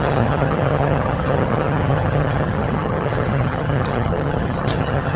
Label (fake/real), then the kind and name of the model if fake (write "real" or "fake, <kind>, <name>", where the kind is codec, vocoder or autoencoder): fake, vocoder, HiFi-GAN